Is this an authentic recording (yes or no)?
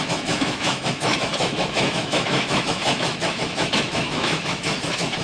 no